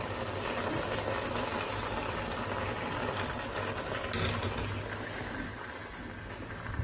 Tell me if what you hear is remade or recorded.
recorded